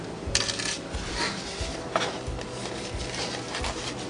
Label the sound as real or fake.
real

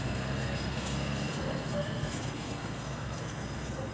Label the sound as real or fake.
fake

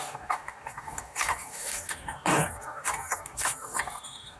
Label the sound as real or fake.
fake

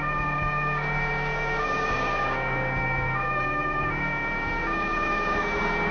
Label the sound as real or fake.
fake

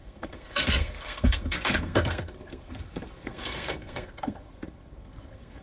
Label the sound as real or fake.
fake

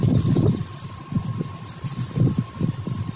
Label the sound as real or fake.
real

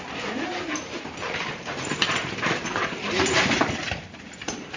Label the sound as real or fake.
fake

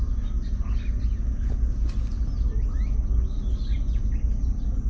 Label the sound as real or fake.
real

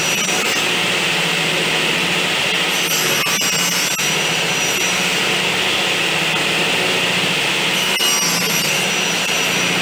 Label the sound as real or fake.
real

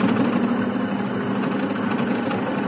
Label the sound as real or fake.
real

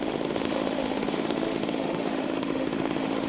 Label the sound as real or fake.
fake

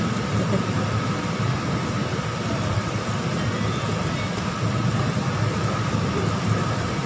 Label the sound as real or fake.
real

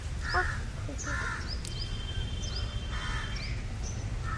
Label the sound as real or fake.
real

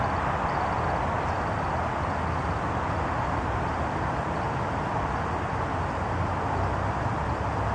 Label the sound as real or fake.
real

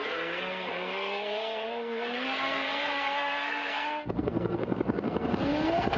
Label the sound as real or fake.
fake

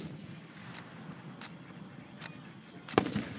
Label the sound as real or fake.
real